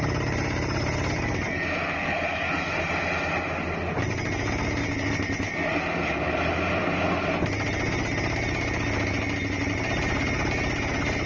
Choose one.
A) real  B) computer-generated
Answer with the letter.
A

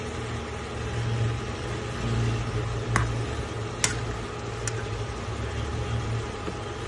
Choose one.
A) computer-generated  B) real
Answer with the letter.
B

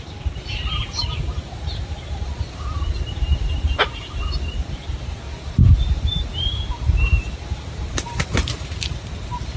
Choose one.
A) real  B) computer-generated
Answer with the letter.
B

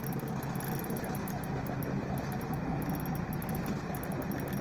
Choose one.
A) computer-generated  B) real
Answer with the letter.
B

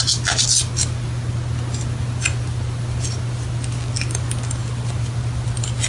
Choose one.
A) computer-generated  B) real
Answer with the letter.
B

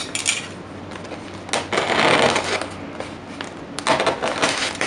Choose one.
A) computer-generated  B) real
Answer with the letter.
B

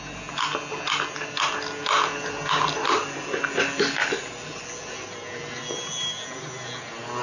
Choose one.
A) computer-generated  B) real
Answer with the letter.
B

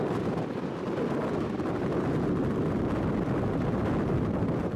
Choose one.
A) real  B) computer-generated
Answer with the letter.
B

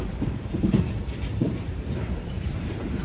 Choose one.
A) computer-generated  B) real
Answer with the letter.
A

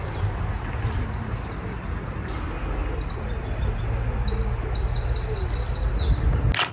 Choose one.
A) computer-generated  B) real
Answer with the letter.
B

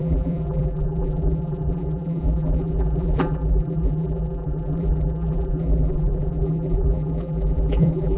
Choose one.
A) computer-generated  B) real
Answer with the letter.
A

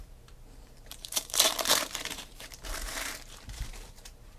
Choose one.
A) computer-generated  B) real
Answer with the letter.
A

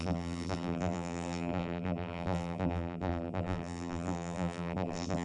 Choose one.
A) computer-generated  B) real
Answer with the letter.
A